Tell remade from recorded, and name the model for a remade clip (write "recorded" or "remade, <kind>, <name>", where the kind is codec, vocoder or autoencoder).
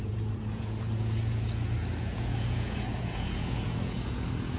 remade, vocoder, Vocos